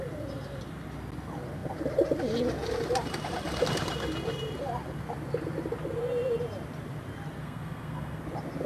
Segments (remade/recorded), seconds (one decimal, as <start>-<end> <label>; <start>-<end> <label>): 0.0-7.4 recorded; 7.4-8.2 remade; 8.2-8.7 recorded

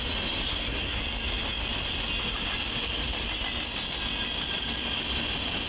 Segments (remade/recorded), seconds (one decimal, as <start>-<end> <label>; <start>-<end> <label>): 0.0-0.5 recorded; 0.5-1.0 remade; 1.0-5.7 recorded

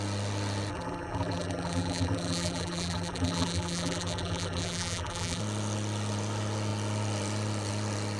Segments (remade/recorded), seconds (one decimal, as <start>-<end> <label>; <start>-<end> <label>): 0.0-0.7 recorded; 0.7-5.4 remade; 5.4-8.2 recorded